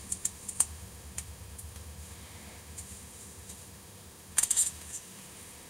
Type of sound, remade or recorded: remade